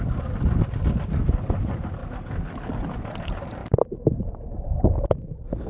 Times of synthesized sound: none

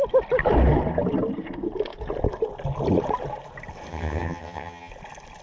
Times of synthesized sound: 3.9-4.9

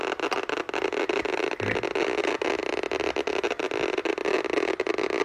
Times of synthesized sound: none